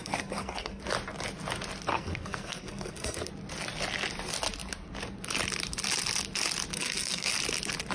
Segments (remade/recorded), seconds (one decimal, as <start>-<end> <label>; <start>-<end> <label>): 0.0-0.8 remade; 0.8-1.9 recorded; 1.9-3.3 remade; 3.3-6.7 recorded; 6.7-7.3 remade; 7.3-7.9 recorded